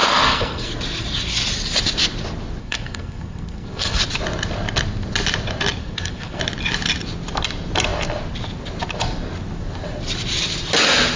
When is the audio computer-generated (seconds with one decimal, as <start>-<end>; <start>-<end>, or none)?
0.0-0.7; 2.6-4.0; 5.8-6.4